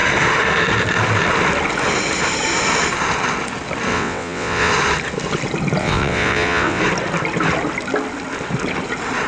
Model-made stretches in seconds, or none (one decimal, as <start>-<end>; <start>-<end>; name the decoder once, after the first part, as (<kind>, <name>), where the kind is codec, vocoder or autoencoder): 3.9-4.7 (vocoder, WaveNeXt); 5.8-6.8